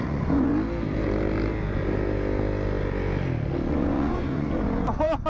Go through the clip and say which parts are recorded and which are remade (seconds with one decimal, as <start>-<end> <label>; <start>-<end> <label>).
0.0-0.5 remade; 0.5-3.7 recorded; 3.7-5.3 remade